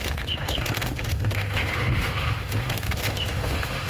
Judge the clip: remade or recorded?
remade